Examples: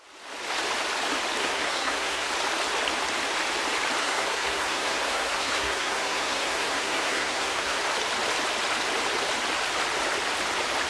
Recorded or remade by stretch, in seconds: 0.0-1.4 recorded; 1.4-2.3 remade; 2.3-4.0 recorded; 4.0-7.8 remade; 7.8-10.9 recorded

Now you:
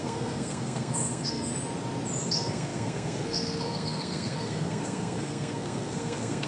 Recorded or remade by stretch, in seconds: 0.0-1.5 remade; 1.5-2.2 recorded; 2.2-6.5 remade

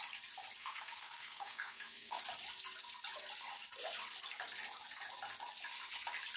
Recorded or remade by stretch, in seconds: 0.0-0.6 recorded; 0.6-2.2 remade; 2.2-6.4 recorded

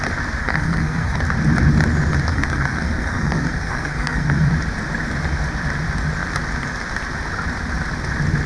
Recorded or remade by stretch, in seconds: 0.0-0.4 recorded; 0.4-1.2 remade; 1.2-2.3 recorded; 2.3-4.5 remade; 4.5-8.5 recorded

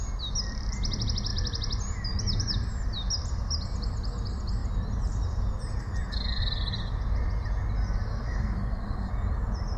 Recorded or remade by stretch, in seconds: 0.0-8.1 recorded; 8.1-9.1 remade; 9.1-9.8 recorded